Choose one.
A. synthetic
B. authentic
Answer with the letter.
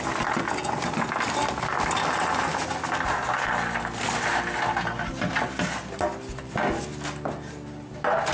B